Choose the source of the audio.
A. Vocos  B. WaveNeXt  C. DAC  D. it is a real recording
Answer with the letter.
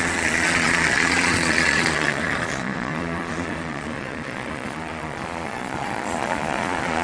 A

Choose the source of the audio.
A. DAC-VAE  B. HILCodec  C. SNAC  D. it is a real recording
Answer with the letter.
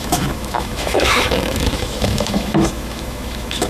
A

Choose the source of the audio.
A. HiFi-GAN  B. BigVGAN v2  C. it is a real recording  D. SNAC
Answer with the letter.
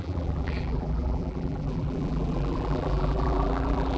B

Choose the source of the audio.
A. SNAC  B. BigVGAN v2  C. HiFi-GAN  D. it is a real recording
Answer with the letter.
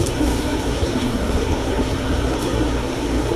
A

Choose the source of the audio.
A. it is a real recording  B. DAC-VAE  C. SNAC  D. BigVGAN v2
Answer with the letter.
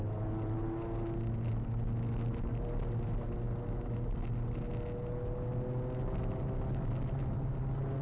A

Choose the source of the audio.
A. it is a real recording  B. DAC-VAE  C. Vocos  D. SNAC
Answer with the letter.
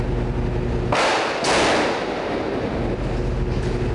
A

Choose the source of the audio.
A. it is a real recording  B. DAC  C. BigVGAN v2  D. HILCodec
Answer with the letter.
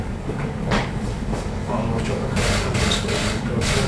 B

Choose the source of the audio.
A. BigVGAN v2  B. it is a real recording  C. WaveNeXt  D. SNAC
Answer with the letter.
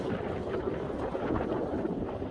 A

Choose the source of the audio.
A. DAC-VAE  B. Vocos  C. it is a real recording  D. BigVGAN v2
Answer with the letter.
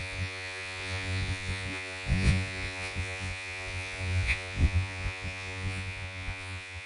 B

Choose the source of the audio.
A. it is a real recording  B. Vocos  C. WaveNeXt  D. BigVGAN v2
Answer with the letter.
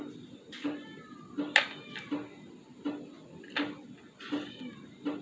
A